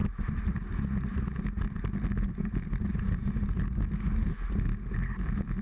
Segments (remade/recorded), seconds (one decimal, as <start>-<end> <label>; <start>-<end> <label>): 0.0-5.6 recorded